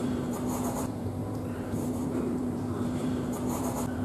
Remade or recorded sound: remade